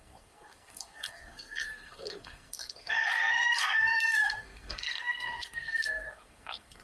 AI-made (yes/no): yes